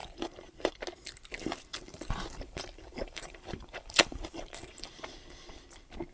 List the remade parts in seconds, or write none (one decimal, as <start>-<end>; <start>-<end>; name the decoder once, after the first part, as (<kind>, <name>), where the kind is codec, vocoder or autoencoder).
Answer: 0.0-0.7 (vocoder, BigVGAN v2); 1.7-5.0